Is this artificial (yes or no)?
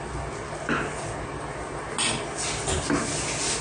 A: no